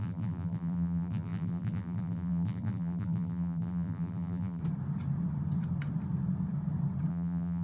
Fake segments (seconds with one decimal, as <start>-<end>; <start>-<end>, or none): 0.0-4.6; 7.1-7.6